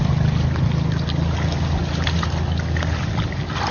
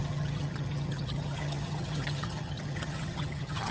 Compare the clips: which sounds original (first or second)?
first